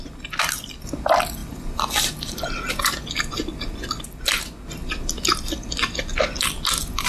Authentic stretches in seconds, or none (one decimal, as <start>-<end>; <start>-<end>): 0.0-7.1